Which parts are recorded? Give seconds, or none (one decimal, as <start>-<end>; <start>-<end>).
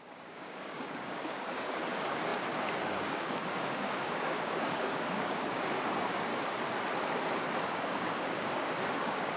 6.3-7.8